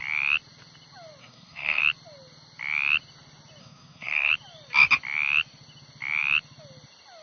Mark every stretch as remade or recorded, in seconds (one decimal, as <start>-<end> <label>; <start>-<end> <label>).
0.0-1.2 recorded; 1.2-1.8 remade; 1.8-3.6 recorded; 3.6-4.3 remade; 4.3-7.2 recorded